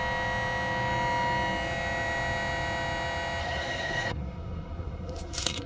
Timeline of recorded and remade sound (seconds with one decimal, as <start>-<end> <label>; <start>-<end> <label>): 0.0-3.4 recorded; 3.4-5.7 remade

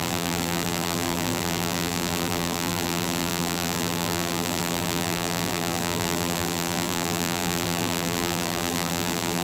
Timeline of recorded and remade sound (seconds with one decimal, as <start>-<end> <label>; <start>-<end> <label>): 0.0-9.4 remade

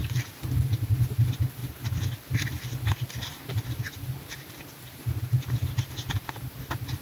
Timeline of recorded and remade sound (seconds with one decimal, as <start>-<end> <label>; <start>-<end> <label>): 0.0-0.8 remade; 0.8-1.6 recorded; 1.6-5.8 remade; 5.8-7.0 recorded

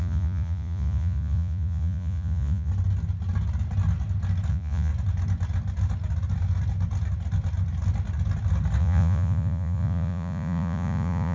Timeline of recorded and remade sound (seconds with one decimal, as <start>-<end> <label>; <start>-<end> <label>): 0.0-2.7 remade; 2.7-4.5 recorded; 4.5-4.9 remade; 4.9-8.8 recorded; 8.8-11.3 remade

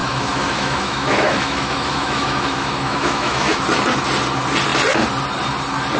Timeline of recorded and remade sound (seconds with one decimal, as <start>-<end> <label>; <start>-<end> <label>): 0.0-3.6 remade; 3.6-6.0 recorded